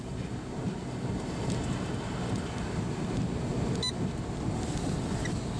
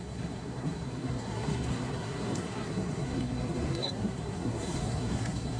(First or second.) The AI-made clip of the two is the second